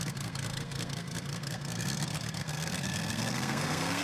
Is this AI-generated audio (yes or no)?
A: yes